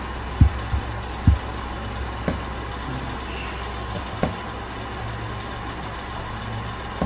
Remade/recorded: recorded